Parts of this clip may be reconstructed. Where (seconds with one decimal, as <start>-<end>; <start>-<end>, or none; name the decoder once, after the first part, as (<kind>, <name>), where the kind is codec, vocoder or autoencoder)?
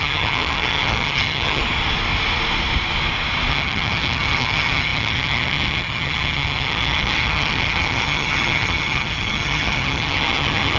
0.0-1.6 (vocoder, HiFi-GAN); 3.5-10.8